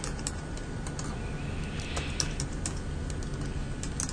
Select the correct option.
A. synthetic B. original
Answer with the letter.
B